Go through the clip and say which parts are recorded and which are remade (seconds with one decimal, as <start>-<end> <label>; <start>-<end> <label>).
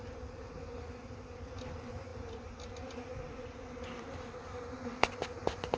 0.0-5.8 recorded